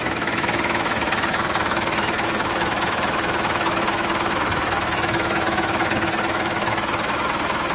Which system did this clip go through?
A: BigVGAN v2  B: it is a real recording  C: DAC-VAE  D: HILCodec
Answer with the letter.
C